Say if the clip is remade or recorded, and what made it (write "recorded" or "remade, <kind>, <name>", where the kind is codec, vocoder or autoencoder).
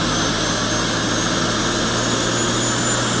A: recorded